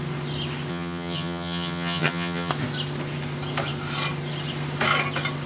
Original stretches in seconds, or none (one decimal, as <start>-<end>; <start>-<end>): 0.0-0.7; 2.5-5.5